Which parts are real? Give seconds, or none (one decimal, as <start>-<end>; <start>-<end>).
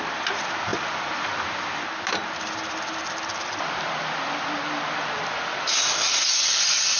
0.0-7.0